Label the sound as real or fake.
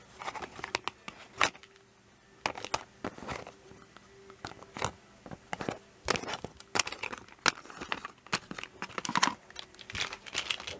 real